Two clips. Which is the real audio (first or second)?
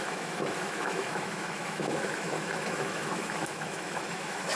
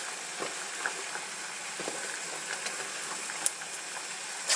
second